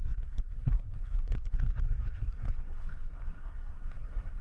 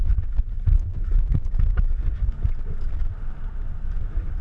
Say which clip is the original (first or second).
second